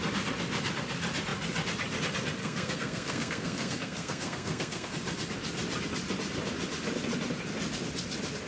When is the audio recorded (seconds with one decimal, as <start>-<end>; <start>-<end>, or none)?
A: 0.0-2.4; 4.9-8.5